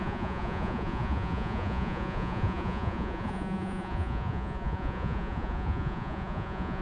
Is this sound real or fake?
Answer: fake